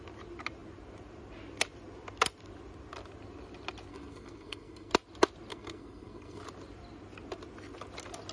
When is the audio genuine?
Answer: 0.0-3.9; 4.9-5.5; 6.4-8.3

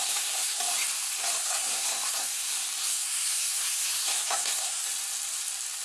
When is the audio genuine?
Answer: 0.6-1.4; 2.5-2.9; 4.8-5.8